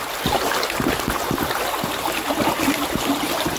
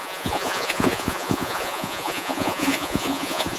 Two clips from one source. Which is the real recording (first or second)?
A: first